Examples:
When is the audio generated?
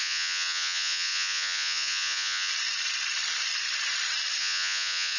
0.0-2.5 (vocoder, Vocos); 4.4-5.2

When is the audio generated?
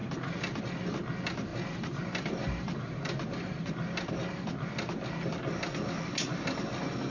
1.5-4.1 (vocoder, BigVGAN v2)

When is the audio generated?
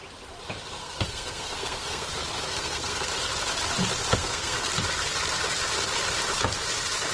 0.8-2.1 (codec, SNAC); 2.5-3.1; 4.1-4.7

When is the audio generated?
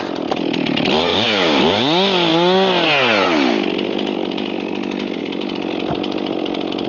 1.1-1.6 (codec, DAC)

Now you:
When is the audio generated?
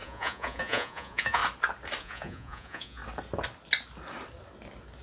0.0-1.4 (vocoder, Vocos); 2.0-3.0